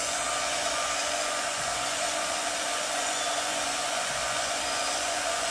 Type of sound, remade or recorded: remade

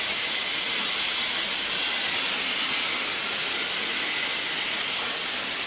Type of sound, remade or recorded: recorded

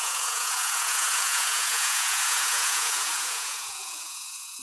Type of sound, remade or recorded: remade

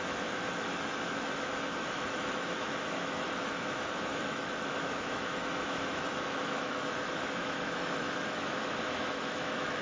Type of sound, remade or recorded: remade